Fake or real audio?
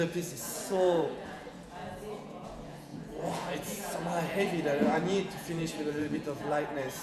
fake